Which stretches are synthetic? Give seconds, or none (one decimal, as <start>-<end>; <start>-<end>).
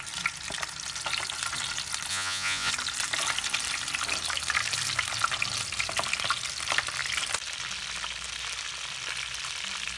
2.1-2.7